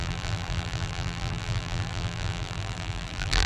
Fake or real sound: fake